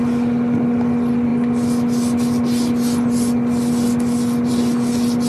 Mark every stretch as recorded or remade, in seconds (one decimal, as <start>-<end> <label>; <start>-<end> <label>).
0.0-5.3 recorded